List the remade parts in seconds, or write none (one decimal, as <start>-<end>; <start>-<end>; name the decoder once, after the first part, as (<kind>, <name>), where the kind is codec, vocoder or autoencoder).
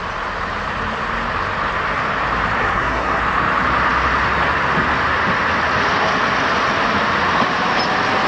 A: 2.6-3.2 (codec, SNAC)